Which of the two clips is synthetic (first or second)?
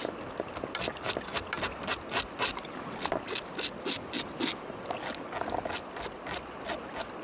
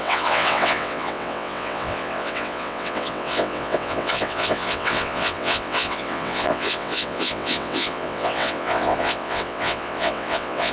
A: second